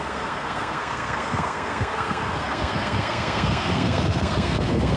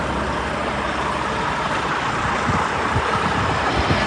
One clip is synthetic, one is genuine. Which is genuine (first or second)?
second